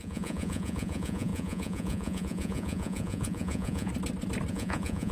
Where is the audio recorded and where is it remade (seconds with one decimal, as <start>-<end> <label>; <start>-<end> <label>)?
0.0-3.9 remade; 3.9-4.5 recorded; 4.5-5.1 remade

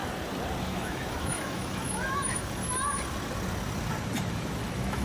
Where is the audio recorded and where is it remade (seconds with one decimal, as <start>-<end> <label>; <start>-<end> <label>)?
0.0-0.6 recorded; 0.6-2.6 remade; 2.6-4.2 recorded; 4.2-5.0 remade

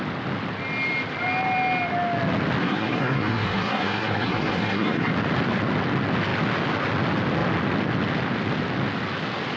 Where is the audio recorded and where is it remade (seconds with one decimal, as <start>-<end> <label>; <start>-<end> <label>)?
0.0-2.6 recorded; 2.6-5.1 remade; 5.1-9.6 recorded

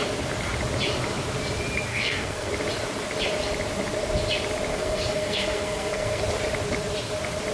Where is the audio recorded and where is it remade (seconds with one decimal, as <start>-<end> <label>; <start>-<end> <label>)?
0.0-1.9 recorded; 1.9-2.5 remade; 2.5-4.7 recorded; 4.7-6.2 remade; 6.2-7.5 recorded